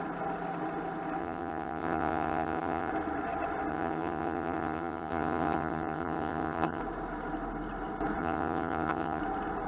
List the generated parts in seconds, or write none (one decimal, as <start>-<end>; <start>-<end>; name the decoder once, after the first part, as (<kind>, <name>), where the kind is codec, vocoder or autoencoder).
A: 1.2-2.9 (vocoder, HiFi-GAN); 3.7-6.8; 8.2-9.2